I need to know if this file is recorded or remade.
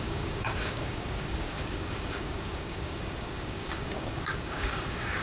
remade